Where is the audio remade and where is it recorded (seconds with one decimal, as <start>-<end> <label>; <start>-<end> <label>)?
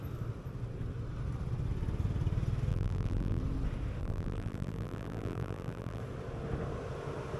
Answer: 0.0-2.7 recorded; 2.7-3.4 remade; 3.4-4.0 recorded; 4.0-6.0 remade; 6.0-7.4 recorded